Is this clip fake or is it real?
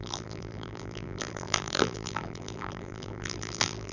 fake